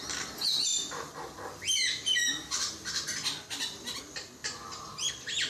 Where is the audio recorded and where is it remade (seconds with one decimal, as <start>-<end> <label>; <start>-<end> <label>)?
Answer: 0.0-0.7 recorded; 0.7-4.0 remade; 4.0-4.4 recorded; 4.4-5.1 remade; 5.1-5.5 recorded